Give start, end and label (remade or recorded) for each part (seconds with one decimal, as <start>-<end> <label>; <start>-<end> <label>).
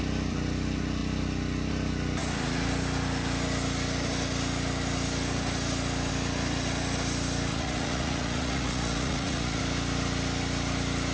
0.0-7.5 recorded; 7.5-9.6 remade; 9.6-11.1 recorded